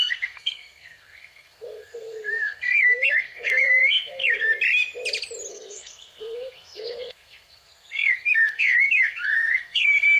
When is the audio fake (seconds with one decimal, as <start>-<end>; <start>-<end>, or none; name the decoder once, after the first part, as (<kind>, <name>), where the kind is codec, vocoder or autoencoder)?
0.0-4.5 (codec, SNAC); 5.5-10.2